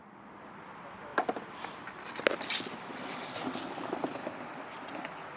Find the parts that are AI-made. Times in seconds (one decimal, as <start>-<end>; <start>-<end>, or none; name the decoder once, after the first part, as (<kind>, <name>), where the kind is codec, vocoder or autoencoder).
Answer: none